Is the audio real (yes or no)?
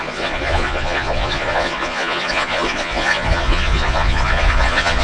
no